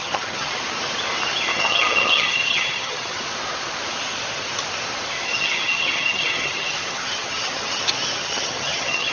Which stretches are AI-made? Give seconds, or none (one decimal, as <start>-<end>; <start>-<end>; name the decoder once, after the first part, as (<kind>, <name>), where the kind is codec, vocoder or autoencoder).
0.0-0.6 (vocoder, HiFi-GAN); 1.5-3.2; 5.3-7.8; 8.2-9.1